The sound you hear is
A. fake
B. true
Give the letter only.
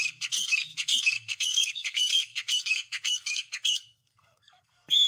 A